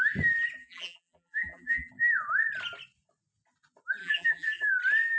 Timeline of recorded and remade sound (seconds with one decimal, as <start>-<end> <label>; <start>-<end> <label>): 0.0-0.6 recorded; 0.6-1.9 remade; 1.9-4.0 recorded; 4.0-4.7 remade; 4.7-5.2 recorded